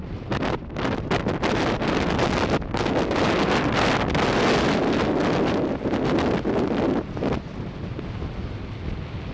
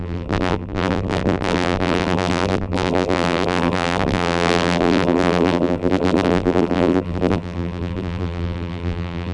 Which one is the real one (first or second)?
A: first